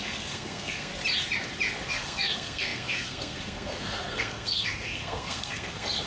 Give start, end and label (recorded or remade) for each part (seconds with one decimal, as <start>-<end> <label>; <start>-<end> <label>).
0.0-0.9 remade; 0.9-1.9 recorded; 1.9-6.1 remade